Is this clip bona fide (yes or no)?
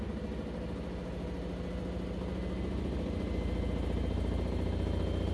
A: yes